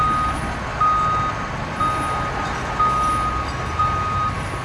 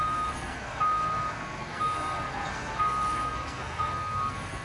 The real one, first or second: first